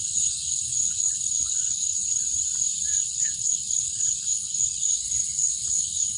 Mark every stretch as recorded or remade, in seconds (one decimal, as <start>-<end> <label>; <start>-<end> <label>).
0.0-2.2 remade; 2.2-2.9 recorded; 2.9-6.2 remade